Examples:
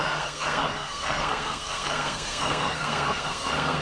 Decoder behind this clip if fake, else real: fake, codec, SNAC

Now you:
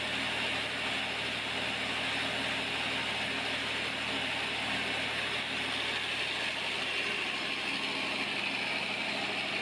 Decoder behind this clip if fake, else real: real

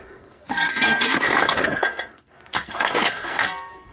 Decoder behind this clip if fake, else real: fake, codec, SNAC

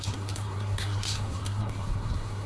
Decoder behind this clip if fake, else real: fake, codec, SNAC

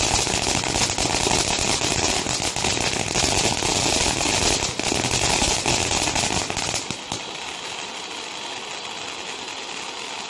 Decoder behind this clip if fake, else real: real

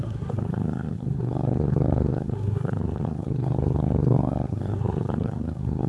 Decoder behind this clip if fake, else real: fake, codec, SNAC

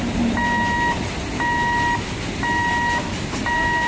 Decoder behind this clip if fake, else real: real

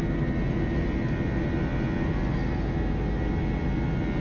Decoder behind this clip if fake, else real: real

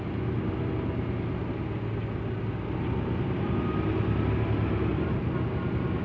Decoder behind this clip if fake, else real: real